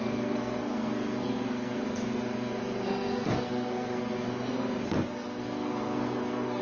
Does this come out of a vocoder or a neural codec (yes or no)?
yes